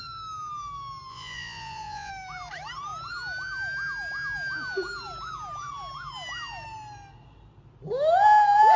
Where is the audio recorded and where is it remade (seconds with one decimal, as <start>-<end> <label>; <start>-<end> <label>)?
0.0-1.1 recorded; 1.1-2.1 remade; 2.1-8.8 recorded